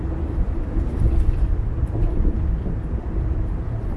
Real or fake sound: fake